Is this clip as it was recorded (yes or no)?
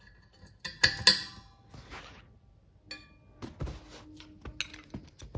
yes